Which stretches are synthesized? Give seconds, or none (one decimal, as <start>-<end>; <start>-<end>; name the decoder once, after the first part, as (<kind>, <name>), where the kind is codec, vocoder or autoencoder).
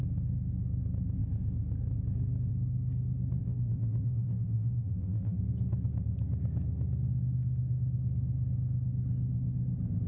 3.4-5.4 (vocoder, BigVGAN v2)